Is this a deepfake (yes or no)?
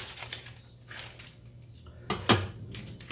no